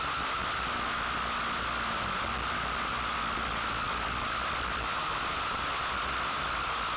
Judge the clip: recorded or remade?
recorded